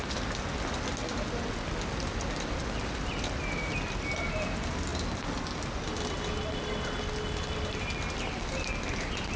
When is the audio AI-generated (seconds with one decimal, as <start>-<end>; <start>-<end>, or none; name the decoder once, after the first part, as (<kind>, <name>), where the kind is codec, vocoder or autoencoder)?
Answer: none